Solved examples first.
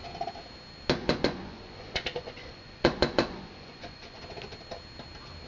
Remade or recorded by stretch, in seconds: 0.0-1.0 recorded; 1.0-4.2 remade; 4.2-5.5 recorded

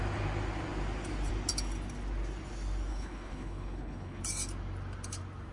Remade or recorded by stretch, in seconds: 0.0-2.9 recorded; 2.9-4.2 remade; 4.2-5.5 recorded

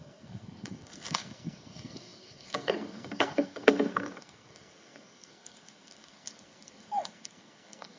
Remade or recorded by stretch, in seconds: 0.0-8.0 remade

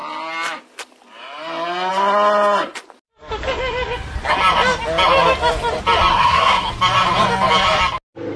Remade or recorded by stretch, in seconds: 0.0-6.1 recorded; 6.1-6.7 remade; 6.7-8.4 recorded

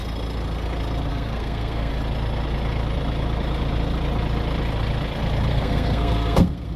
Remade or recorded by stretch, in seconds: 0.0-1.1 recorded; 1.1-1.9 remade; 1.9-5.5 recorded; 5.5-6.8 remade

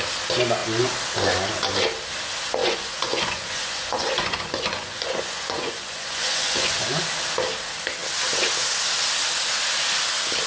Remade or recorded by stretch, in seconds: 0.0-2.6 recorded; 2.6-7.0 remade; 7.0-10.5 recorded

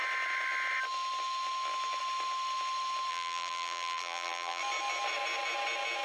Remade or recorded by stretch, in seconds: 0.0-3.1 recorded; 3.1-4.6 remade; 4.6-6.0 recorded